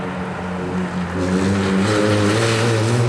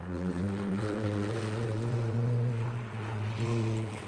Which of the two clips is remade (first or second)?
second